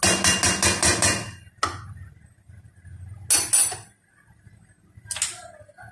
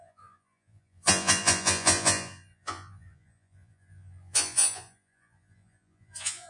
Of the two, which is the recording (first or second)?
first